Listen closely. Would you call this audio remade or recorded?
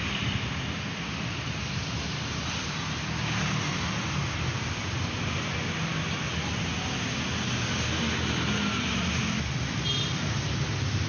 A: recorded